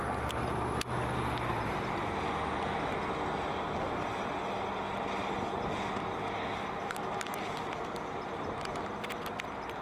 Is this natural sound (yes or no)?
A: yes